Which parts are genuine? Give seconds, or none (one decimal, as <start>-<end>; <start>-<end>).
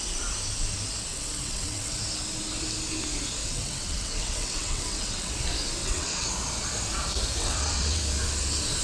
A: 0.0-1.1; 2.0-3.4; 5.3-5.8; 6.3-7.4; 8.0-8.8